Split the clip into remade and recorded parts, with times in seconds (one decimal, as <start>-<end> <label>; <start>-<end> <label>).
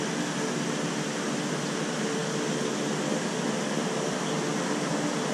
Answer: 0.0-5.3 recorded